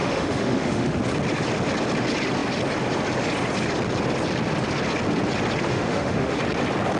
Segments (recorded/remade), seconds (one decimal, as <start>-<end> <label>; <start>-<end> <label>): 0.0-1.0 remade; 1.0-5.7 recorded; 5.7-6.4 remade; 6.4-7.0 recorded